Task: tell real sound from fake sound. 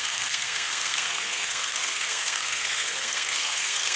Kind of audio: fake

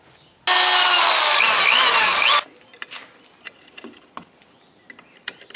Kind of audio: real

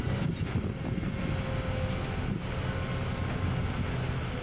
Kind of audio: real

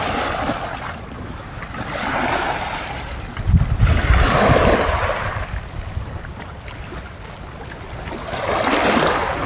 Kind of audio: real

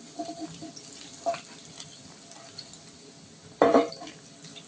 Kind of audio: real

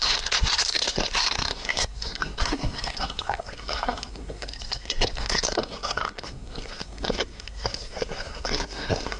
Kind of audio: fake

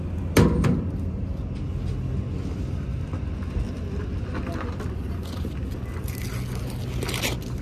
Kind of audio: real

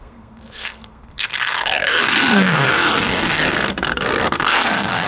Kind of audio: fake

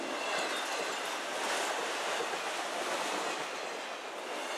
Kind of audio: real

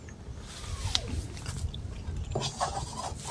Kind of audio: real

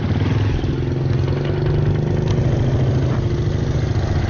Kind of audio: real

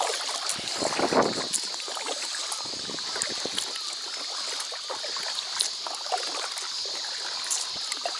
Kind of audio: real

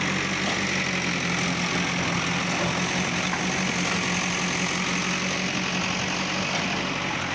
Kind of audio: real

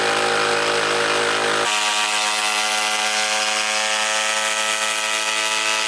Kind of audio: real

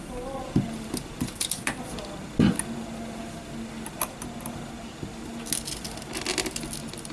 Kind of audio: real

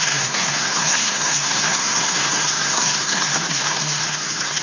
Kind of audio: fake